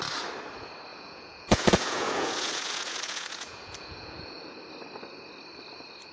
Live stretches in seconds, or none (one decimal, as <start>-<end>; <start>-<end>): 0.0-0.9; 4.6-6.1